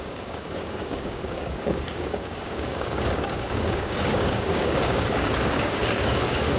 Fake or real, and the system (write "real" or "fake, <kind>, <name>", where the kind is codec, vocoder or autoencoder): fake, codec, DAC